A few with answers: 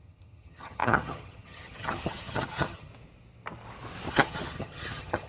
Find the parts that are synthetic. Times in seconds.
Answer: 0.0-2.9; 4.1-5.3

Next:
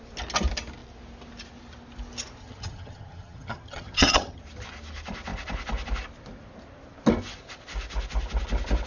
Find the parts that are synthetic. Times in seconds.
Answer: 2.4-4.4

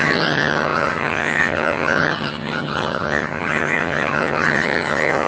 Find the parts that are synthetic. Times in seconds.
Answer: 0.0-5.3

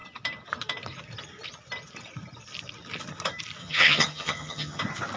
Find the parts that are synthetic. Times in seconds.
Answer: 3.6-4.8

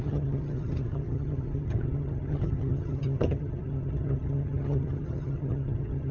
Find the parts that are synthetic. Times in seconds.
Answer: 0.0-6.1

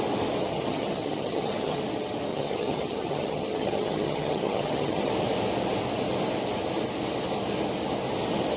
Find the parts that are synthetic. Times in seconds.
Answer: 0.5-1.8; 2.3-5.1

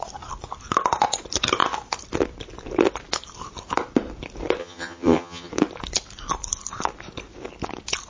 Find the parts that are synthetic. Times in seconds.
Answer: 4.6-5.5